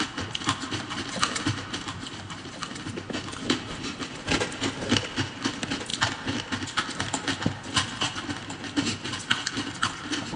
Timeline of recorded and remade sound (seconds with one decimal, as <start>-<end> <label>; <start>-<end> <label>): 0.0-10.4 recorded